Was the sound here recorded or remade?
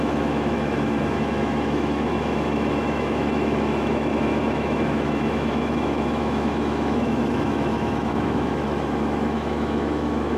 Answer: remade